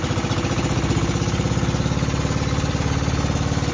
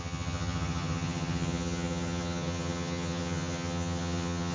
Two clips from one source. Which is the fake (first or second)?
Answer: second